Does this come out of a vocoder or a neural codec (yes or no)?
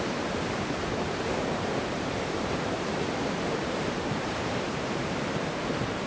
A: yes